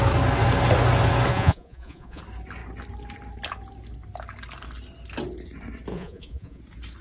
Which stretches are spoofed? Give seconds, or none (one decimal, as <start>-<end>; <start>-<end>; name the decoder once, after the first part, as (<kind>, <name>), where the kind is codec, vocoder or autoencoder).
1.3-2.2 (vocoder, Vocos); 5.9-6.6